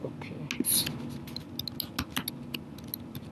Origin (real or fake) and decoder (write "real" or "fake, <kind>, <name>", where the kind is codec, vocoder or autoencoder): real